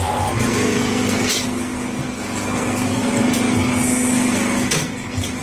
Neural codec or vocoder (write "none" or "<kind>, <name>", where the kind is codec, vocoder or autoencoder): codec, SNAC